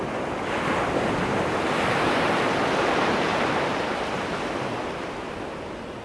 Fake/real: real